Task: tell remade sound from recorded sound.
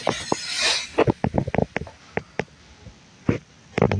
recorded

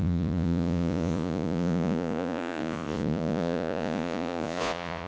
remade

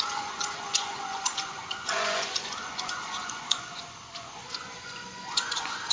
remade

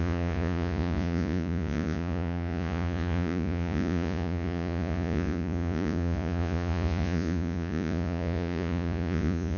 remade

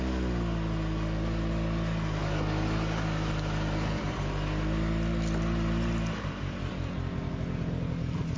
recorded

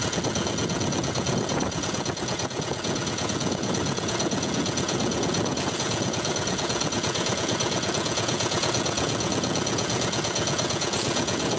remade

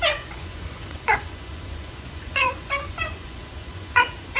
remade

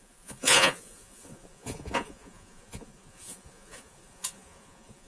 remade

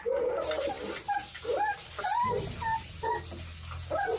recorded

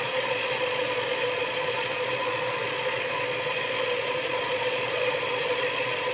remade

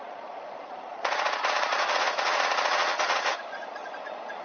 remade